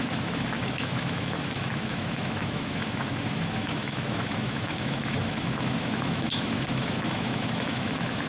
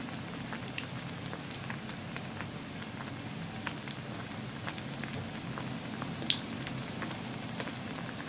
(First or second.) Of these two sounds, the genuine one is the second